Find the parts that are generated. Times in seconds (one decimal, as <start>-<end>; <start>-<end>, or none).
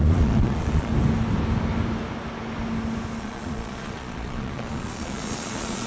0.0-0.9; 3.2-5.9